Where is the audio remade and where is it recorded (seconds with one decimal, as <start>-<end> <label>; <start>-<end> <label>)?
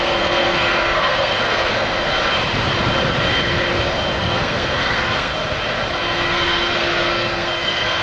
0.0-1.9 remade; 1.9-4.2 recorded; 4.2-5.3 remade; 5.3-5.9 recorded; 5.9-8.0 remade